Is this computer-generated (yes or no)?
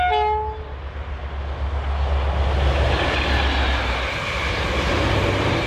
no